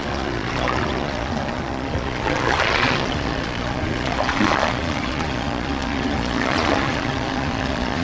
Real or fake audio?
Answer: fake